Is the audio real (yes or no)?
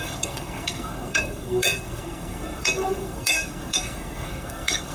no